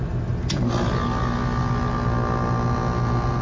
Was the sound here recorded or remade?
recorded